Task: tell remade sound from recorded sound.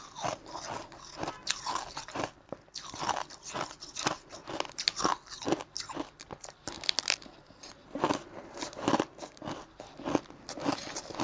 recorded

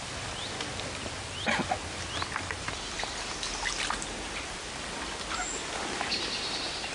recorded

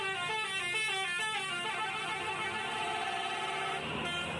recorded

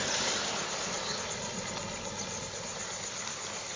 recorded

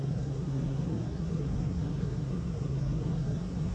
remade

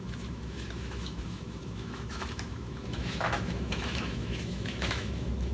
remade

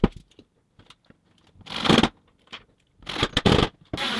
recorded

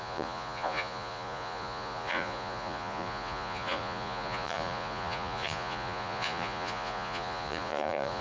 remade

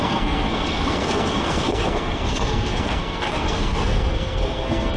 remade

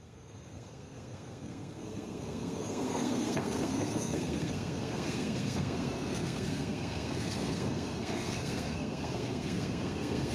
remade